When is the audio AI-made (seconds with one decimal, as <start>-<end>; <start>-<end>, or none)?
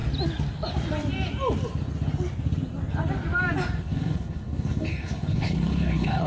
3.8-6.3